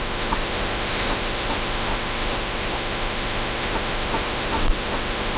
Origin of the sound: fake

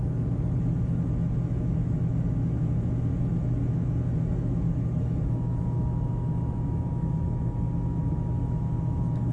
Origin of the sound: fake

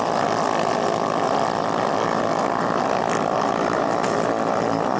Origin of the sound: real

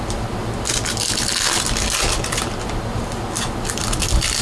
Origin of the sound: real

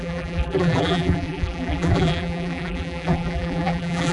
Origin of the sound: fake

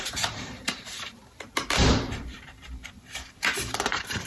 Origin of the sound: fake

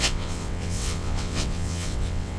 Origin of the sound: fake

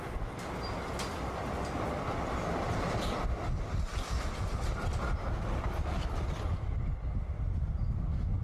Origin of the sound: real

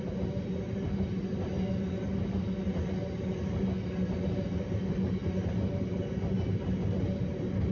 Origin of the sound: real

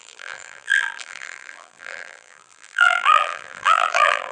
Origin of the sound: fake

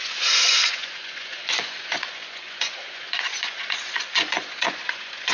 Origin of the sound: fake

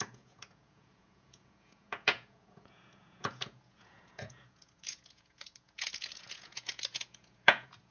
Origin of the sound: fake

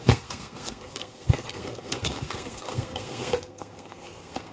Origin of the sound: fake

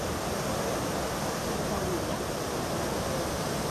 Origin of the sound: real